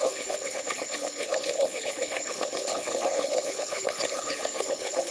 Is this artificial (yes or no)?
yes